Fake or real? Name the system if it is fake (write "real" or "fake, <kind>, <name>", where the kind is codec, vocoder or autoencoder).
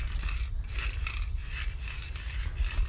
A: real